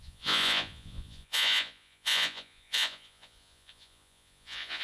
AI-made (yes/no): yes